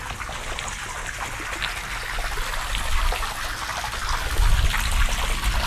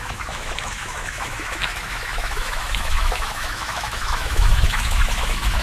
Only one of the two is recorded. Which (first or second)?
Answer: first